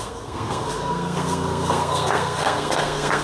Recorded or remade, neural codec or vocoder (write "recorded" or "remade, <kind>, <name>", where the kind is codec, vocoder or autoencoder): remade, codec, SNAC